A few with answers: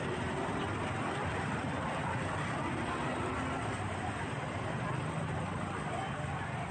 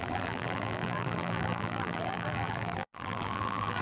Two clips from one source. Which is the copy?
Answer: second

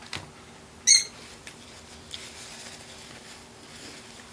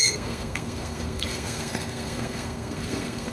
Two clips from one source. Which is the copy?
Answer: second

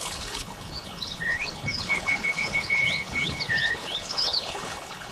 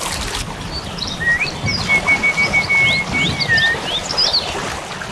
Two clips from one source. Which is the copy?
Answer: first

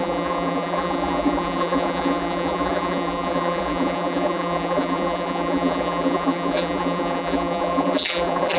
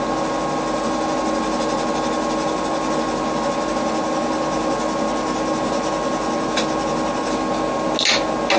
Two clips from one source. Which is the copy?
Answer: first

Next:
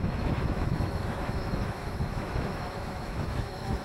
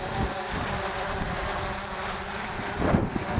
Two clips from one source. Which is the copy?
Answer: first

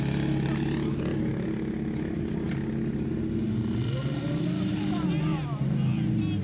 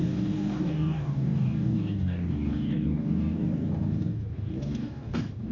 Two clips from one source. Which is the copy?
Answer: second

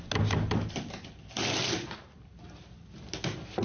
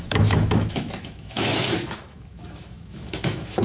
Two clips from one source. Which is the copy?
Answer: second